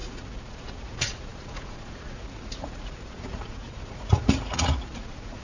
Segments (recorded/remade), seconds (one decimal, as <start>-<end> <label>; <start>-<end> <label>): 0.0-5.4 remade